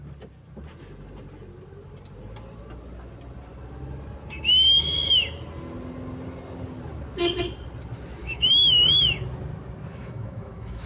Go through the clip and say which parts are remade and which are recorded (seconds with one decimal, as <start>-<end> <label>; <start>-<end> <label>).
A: 0.0-8.2 recorded; 8.2-9.0 remade; 9.0-9.9 recorded; 9.9-10.9 remade